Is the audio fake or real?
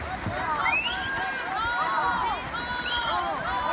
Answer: real